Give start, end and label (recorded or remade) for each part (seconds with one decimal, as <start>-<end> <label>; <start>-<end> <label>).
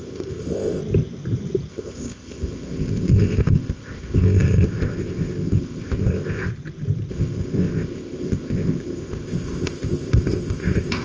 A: 0.0-0.8 remade; 0.8-1.7 recorded; 1.7-6.5 remade; 6.5-7.1 recorded; 7.1-11.0 remade